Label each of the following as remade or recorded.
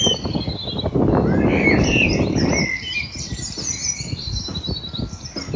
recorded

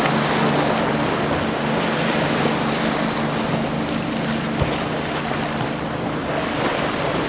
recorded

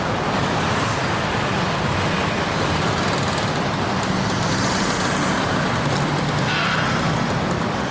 recorded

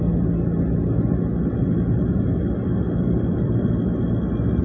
recorded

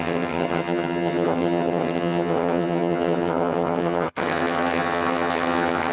remade